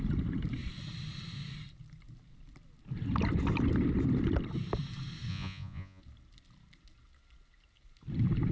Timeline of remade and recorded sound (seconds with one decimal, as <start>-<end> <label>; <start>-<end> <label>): 0.0-5.3 recorded; 5.3-6.0 remade; 6.0-8.5 recorded